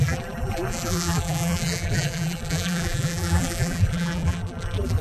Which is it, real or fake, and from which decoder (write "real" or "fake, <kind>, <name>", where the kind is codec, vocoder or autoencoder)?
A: fake, vocoder, BigVGAN v2